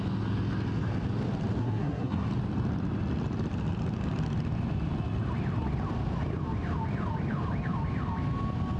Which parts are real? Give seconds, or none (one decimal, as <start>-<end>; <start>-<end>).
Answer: 0.0-1.6; 2.3-8.8